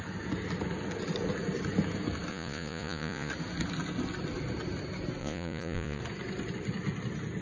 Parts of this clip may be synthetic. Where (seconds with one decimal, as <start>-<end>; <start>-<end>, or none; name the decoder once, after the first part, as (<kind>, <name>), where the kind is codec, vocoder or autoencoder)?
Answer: 2.3-3.3 (vocoder, Vocos); 5.2-6.0